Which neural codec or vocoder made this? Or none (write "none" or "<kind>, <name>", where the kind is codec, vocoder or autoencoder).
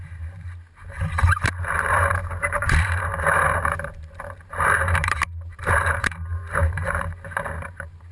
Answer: vocoder, BigVGAN v2